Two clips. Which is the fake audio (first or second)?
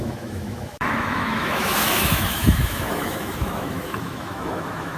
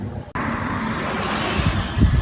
first